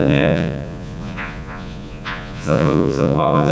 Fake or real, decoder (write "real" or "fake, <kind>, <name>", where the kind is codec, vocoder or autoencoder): fake, vocoder, Vocos